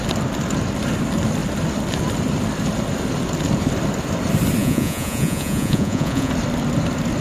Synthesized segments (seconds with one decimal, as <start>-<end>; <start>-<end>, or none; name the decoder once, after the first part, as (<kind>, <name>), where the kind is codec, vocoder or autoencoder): 4.6-6.3 (vocoder, Vocos)